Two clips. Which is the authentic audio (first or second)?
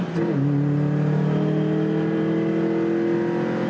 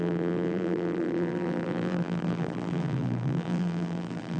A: first